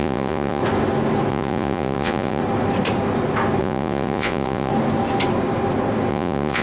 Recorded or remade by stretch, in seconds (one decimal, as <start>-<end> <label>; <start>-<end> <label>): 0.0-0.6 remade; 0.6-1.3 recorded; 1.3-2.4 remade; 2.4-3.6 recorded; 3.6-4.7 remade; 4.7-6.1 recorded; 6.1-6.6 remade